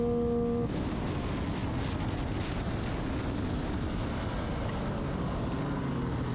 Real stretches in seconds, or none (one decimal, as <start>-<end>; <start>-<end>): 0.0-6.3

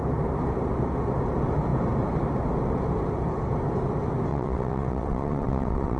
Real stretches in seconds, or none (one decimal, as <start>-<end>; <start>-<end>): 0.0-4.3

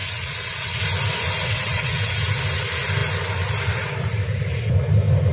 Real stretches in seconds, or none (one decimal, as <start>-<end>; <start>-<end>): 0.8-1.4; 2.1-5.3

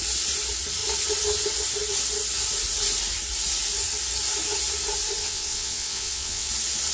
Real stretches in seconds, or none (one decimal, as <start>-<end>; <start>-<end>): 0.0-5.2; 6.5-6.9

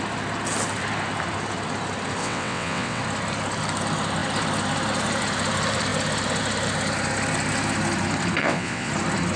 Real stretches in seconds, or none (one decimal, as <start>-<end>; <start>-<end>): 0.0-2.2; 3.0-8.4; 8.9-9.4

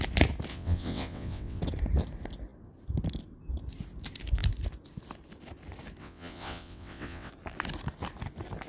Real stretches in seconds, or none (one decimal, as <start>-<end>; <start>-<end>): 0.0-0.5; 1.6-6.0; 7.3-8.7

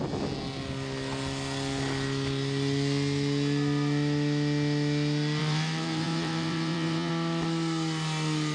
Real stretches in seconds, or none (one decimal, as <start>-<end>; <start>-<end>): 0.0-5.4; 7.1-8.5